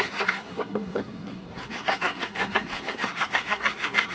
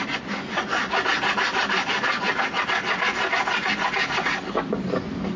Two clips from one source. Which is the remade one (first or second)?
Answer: first